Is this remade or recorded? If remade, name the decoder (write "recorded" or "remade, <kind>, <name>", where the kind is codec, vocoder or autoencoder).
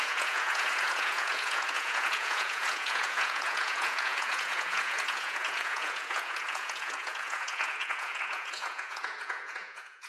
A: remade, vocoder, Vocos